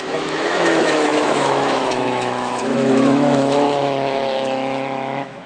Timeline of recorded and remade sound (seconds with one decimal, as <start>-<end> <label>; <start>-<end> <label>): 0.0-5.5 remade